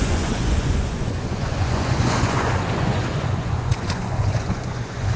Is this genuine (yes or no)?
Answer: no